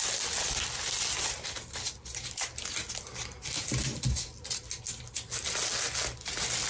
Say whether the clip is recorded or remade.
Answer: recorded